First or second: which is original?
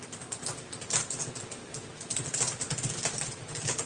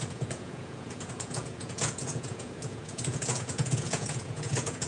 first